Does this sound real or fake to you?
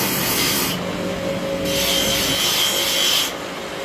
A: real